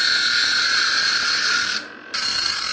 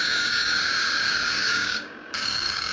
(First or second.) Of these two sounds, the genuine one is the first